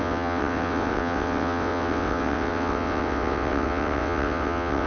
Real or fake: fake